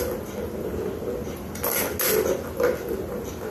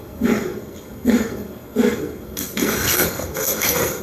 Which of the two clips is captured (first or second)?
first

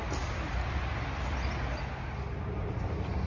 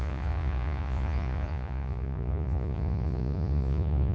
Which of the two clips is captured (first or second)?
first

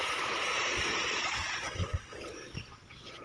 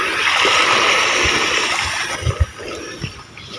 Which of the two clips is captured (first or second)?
second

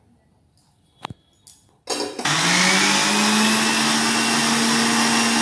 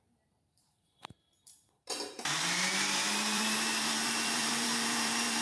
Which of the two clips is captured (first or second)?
first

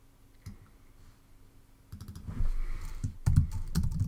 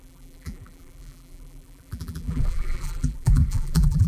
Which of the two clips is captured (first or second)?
first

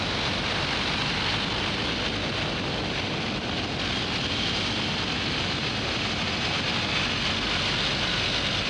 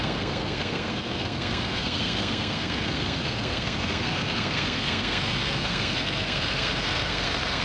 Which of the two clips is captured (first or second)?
first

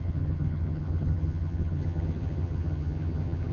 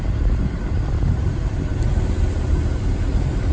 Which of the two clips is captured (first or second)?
second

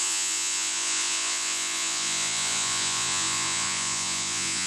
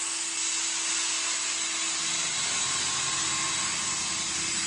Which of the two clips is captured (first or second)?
second